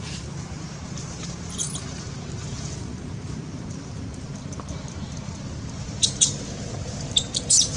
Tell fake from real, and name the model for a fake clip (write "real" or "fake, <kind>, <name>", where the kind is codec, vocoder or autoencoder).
fake, vocoder, BigVGAN v2